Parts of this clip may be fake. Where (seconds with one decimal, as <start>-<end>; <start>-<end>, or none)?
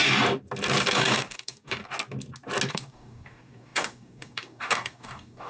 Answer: 0.9-1.8; 2.7-5.5